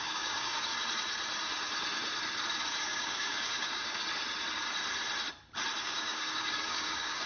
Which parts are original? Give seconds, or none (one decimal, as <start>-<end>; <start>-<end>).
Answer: 0.7-2.8; 4.0-5.8